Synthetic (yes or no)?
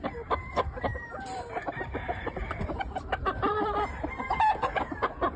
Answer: yes